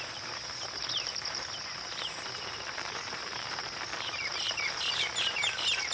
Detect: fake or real fake